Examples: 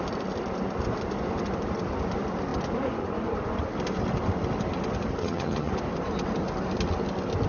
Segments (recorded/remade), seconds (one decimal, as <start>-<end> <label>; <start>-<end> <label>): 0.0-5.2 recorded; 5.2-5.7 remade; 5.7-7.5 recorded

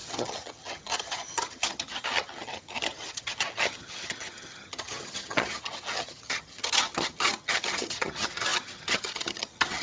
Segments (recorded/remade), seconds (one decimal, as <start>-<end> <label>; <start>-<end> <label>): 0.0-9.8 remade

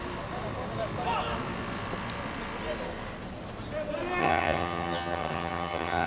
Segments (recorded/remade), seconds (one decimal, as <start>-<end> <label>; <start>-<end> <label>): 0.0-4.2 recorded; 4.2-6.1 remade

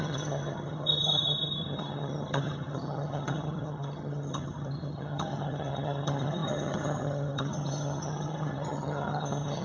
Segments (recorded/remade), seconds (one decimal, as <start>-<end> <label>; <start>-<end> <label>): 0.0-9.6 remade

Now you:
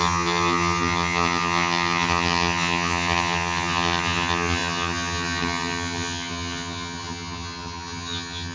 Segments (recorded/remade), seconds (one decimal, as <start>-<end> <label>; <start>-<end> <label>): 0.0-8.5 remade